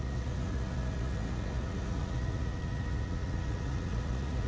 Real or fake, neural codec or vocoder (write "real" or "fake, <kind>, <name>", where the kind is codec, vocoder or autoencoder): fake, vocoder, Vocos